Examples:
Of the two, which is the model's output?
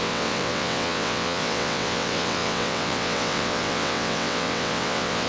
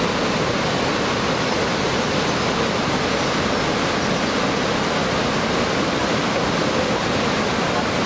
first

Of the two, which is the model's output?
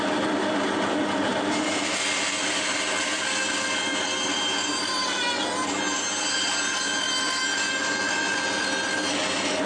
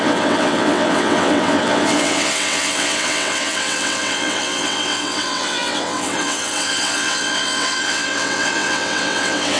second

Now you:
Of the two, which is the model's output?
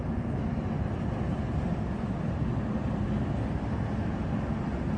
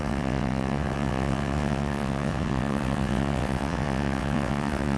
second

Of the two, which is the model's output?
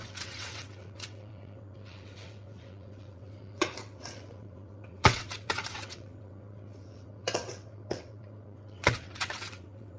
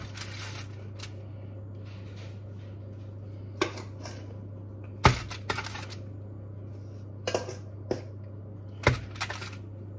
first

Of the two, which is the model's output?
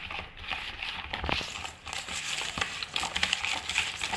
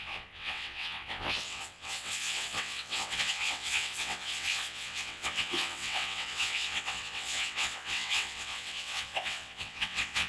second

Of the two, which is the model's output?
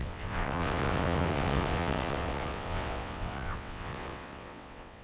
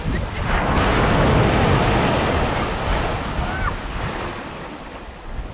first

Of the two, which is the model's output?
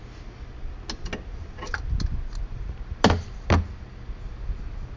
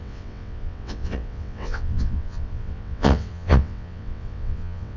second